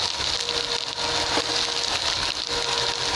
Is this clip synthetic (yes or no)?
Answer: no